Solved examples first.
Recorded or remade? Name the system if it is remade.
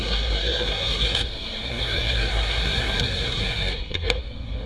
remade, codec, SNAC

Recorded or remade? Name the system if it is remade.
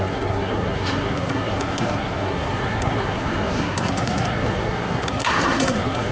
remade, codec, SNAC